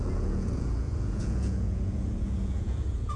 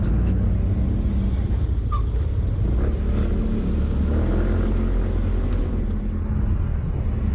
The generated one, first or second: first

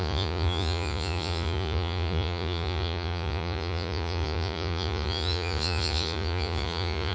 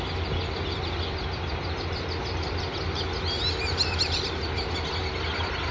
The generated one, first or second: first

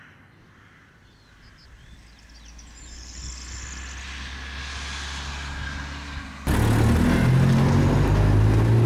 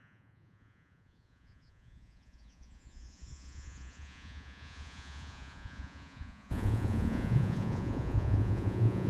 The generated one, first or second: second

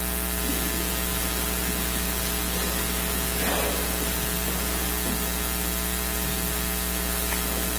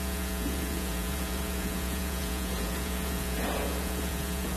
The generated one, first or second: second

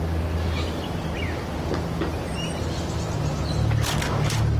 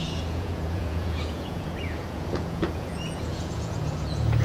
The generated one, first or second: second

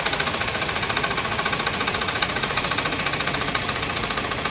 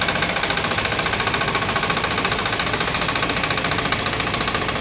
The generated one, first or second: first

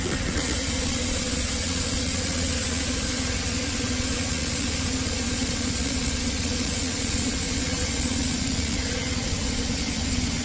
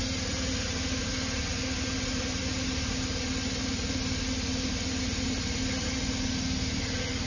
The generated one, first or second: first